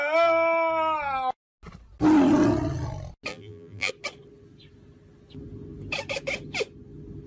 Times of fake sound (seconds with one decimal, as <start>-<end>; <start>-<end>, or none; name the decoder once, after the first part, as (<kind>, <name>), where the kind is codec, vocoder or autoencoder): 3.3-3.9 (vocoder, BigVGAN v2)